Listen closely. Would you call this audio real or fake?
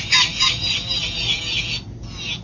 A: real